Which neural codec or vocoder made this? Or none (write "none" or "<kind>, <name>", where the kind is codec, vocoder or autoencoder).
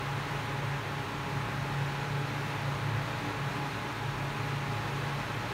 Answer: none